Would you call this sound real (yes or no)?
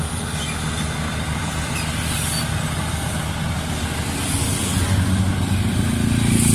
yes